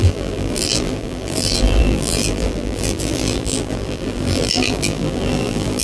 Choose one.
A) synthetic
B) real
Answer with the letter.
A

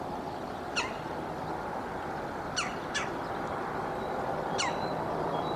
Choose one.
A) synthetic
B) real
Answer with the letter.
A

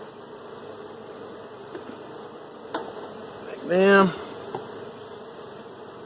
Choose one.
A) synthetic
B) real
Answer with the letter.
B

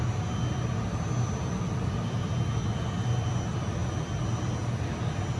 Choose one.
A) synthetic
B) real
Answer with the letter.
B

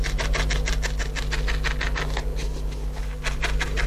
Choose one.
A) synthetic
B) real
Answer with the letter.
B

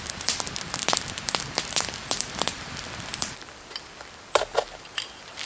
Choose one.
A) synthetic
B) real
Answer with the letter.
A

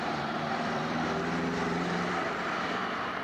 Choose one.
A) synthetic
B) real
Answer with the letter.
A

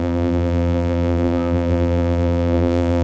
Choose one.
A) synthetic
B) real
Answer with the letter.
A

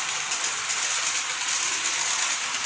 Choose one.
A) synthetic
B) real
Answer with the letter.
B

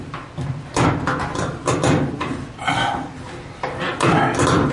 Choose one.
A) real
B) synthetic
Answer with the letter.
B